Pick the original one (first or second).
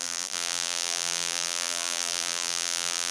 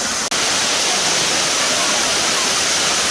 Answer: second